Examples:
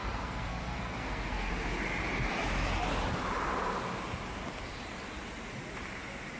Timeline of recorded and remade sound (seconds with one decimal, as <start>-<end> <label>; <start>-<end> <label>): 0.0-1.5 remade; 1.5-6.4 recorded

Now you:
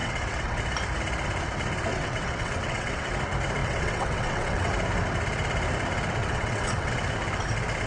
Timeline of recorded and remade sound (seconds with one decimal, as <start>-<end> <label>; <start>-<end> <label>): 0.0-0.6 remade; 0.6-1.9 recorded; 1.9-3.1 remade; 3.1-3.6 recorded; 3.6-4.7 remade; 4.7-6.2 recorded; 6.2-6.9 remade; 6.9-7.9 recorded

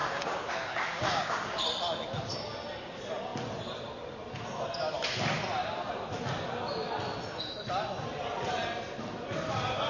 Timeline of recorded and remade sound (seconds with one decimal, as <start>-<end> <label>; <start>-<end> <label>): 0.0-0.5 remade; 0.5-0.9 recorded; 0.9-1.5 remade; 1.5-9.9 recorded

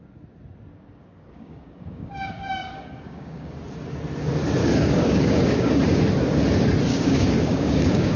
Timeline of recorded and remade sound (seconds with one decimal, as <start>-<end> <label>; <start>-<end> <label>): 0.0-0.7 recorded; 0.7-3.5 remade; 3.5-4.6 recorded; 4.6-5.7 remade; 5.7-6.9 recorded; 6.9-8.2 remade

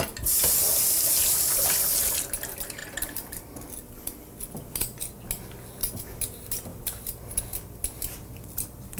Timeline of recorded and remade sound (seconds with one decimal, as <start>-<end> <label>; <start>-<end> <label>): 0.0-9.0 recorded

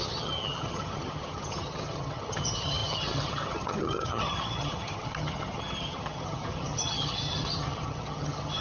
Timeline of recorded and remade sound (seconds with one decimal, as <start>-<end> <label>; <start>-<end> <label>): 0.0-8.6 remade

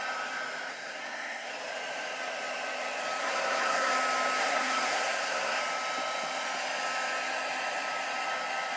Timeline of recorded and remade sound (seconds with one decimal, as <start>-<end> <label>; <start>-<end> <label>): 0.0-0.7 recorded; 0.7-1.5 remade; 1.5-3.2 recorded; 3.2-3.9 remade; 3.9-4.4 recorded; 4.4-5.6 remade; 5.6-8.8 recorded

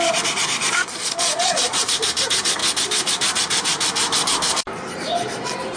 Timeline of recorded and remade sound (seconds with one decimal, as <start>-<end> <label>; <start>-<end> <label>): 0.0-0.6 recorded; 0.6-1.9 remade; 1.9-5.8 recorded